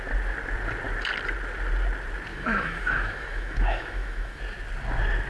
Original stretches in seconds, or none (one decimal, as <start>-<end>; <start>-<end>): 0.0-2.3; 4.4-5.3